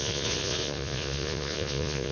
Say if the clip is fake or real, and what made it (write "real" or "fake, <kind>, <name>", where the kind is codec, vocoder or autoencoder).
fake, vocoder, Vocos